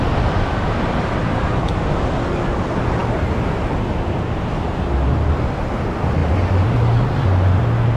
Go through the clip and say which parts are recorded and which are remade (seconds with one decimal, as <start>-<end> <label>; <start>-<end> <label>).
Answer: 0.0-8.0 recorded